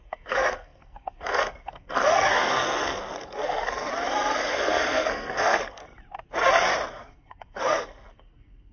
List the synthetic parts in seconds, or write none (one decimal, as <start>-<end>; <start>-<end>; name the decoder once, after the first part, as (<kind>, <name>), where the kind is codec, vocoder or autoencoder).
0.0-3.9 (codec, SNAC); 4.5-5.8; 6.9-8.7